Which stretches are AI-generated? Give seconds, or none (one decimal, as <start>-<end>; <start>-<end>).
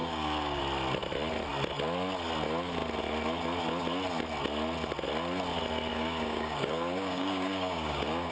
0.0-0.6; 5.9-8.3